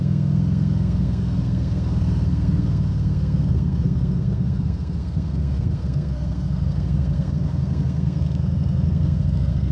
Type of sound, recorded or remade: remade